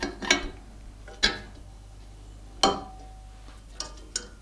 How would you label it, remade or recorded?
recorded